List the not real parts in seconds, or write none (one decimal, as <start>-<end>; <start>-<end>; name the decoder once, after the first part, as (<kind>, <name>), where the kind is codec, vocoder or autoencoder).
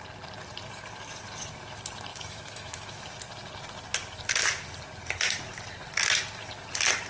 2.1-3.0 (autoencoder, DAC-VAE)